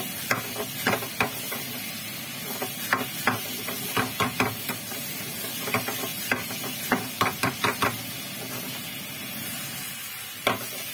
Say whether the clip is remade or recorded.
recorded